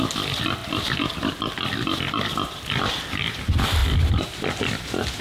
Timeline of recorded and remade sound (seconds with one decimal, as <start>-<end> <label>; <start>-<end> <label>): 0.0-5.2 recorded